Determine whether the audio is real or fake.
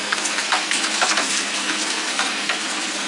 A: fake